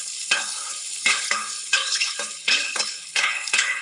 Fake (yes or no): yes